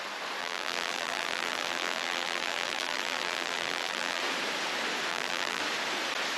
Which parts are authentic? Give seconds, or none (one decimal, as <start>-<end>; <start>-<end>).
0.0-0.4; 4.2-5.1; 5.6-6.4